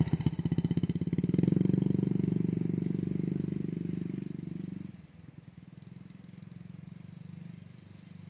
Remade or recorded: recorded